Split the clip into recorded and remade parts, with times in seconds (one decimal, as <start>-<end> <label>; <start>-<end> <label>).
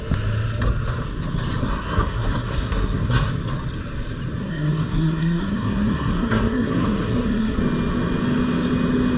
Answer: 0.0-1.6 recorded; 1.6-3.3 remade; 3.3-4.4 recorded; 4.4-7.6 remade; 7.6-9.2 recorded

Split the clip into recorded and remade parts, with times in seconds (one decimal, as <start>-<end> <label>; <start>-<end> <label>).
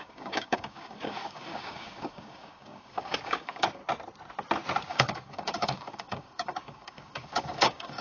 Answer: 0.0-3.8 remade; 3.8-4.9 recorded; 4.9-8.0 remade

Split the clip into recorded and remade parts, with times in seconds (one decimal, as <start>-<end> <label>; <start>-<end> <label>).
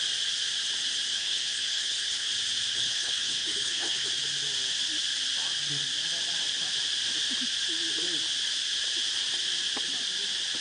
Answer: 0.0-1.1 recorded; 1.1-2.3 remade; 2.3-2.7 recorded; 2.7-4.1 remade; 4.1-10.6 recorded